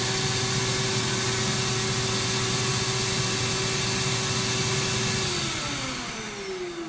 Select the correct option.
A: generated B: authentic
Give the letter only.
B